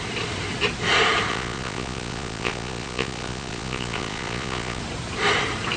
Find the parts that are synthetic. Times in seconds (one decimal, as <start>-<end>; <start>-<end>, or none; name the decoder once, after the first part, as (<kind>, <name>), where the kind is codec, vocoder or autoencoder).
1.3-4.8 (vocoder, Vocos)